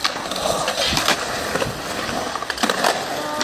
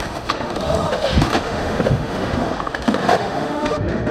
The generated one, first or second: second